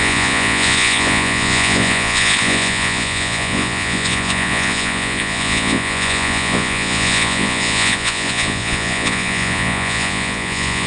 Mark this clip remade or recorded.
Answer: remade